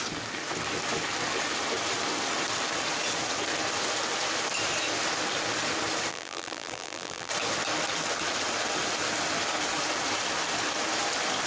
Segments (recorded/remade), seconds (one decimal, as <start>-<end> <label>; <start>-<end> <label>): 0.0-6.1 recorded; 6.1-7.3 remade; 7.3-11.5 recorded